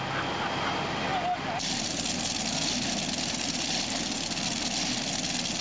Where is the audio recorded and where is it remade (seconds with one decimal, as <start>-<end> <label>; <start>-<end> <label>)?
0.0-5.6 recorded